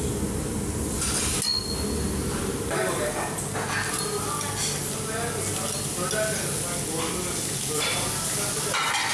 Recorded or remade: recorded